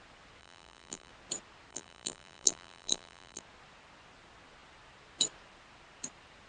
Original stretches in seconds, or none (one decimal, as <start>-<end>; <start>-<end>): 0.0-0.4; 1.1-1.7; 3.4-6.5